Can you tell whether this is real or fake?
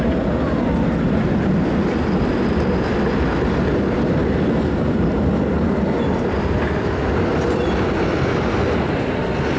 real